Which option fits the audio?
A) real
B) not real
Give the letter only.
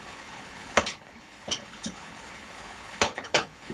B